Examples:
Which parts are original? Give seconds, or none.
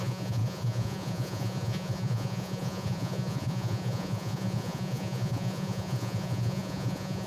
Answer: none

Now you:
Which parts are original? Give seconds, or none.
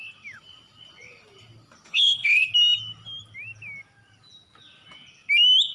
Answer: 0.0-1.9; 2.5-5.7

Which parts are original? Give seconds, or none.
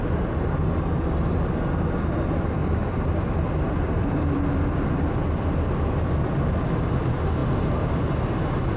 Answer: 0.0-2.8; 5.0-8.8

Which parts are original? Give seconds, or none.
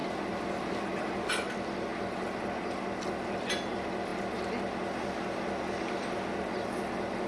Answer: 1.3-1.9; 2.8-7.3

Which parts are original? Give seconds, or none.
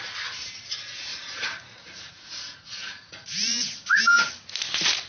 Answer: 0.0-1.1; 4.0-5.1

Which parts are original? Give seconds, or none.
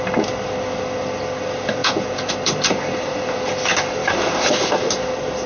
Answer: 0.0-1.8; 2.3-5.5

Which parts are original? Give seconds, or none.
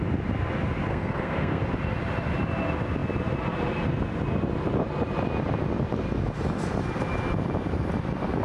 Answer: 0.0-0.9; 1.6-8.4